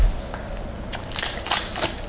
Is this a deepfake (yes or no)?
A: no